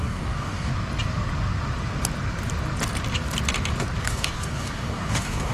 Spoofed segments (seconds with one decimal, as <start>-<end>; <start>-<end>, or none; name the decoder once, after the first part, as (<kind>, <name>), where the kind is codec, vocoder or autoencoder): 0.0-0.7 (codec, DAC); 4.0-5.5